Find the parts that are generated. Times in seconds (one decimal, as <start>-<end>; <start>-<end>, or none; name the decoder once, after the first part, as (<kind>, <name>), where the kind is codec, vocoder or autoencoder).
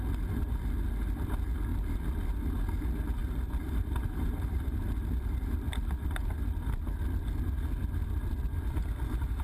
3.2-4.8 (vocoder, BigVGAN v2)